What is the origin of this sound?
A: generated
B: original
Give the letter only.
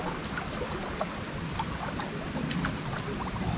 B